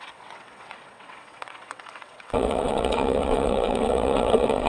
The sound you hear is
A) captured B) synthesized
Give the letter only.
B